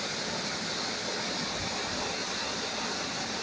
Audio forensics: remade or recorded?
recorded